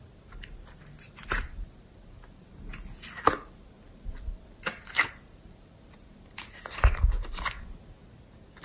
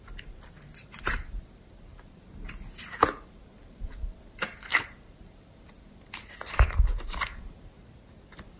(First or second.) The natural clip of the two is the first